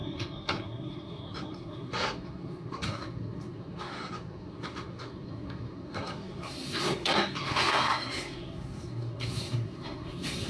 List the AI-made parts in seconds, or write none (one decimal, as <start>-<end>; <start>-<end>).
0.0-10.5